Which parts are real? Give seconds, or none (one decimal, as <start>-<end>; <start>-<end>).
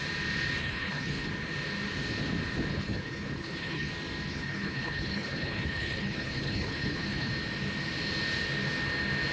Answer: 0.0-0.6; 1.3-2.7; 3.9-4.3; 7.3-9.3